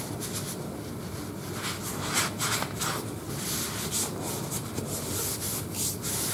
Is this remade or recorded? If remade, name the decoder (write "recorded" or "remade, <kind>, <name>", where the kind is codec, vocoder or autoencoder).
recorded